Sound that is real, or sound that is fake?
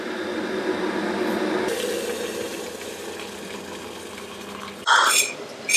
real